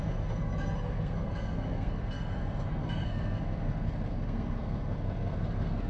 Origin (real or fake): fake